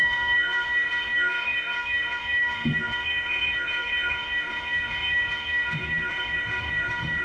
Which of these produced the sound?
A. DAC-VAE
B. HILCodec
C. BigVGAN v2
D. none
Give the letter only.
A